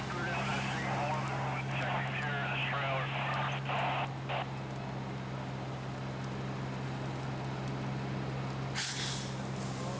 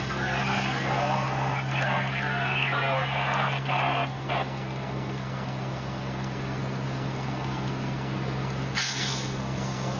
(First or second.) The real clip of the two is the first